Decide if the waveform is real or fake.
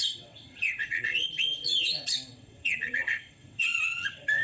fake